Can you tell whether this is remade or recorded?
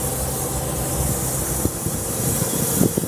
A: recorded